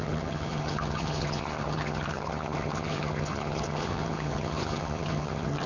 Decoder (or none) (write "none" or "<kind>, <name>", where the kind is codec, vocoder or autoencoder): vocoder, HiFi-GAN